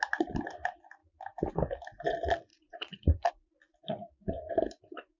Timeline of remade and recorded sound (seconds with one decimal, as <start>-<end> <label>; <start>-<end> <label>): 0.0-2.5 recorded; 2.5-3.3 remade; 3.3-5.2 recorded